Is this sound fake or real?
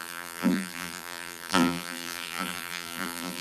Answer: fake